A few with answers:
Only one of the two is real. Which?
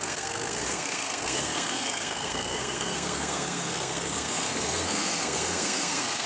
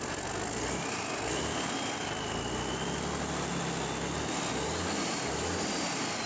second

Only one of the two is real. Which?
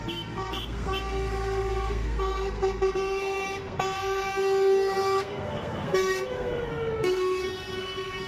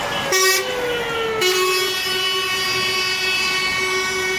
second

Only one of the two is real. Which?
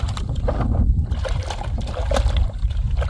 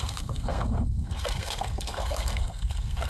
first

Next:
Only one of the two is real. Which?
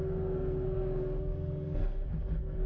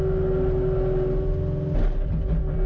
second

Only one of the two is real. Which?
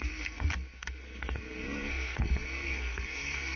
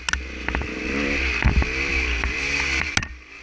second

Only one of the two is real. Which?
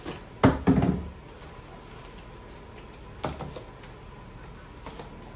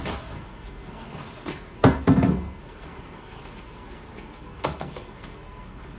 first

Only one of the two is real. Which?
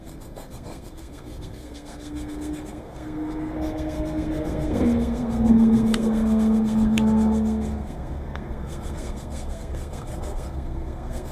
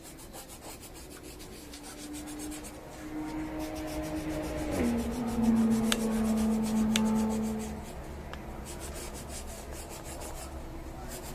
second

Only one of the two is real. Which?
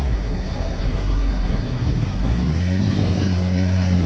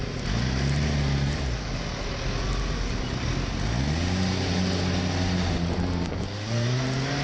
second